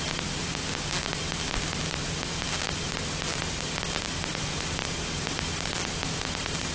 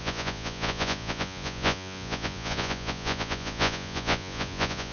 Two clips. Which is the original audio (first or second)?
first